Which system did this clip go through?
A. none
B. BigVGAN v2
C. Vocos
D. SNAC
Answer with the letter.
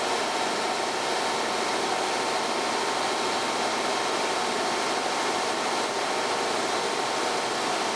B